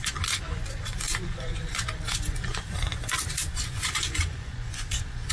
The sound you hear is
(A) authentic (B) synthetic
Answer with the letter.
B